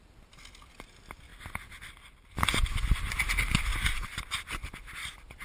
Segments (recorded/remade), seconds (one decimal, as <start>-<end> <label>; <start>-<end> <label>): 0.0-5.4 recorded